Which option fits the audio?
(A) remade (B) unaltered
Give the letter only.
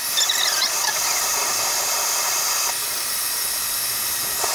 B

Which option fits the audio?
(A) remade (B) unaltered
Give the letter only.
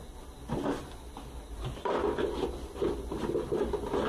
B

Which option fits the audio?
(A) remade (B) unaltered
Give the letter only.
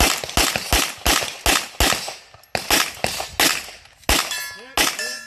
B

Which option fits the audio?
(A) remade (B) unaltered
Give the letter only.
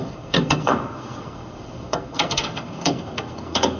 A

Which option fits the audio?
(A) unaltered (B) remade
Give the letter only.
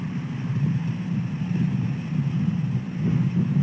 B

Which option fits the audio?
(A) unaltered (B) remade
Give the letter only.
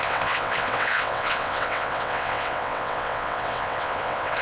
B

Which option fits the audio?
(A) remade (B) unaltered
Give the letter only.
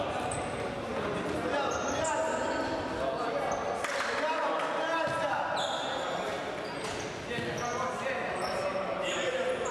B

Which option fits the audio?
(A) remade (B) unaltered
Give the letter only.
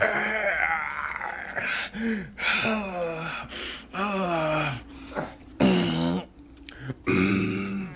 B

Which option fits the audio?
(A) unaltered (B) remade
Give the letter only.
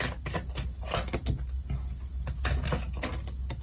A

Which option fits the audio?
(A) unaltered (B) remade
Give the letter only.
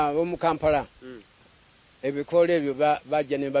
A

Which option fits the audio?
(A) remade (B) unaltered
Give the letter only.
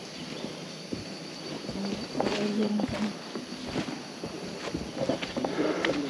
B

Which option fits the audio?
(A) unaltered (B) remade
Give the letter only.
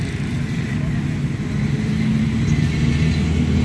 A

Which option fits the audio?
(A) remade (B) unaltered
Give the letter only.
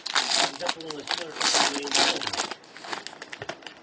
B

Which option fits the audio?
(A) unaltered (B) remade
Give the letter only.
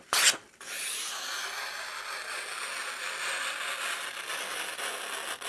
A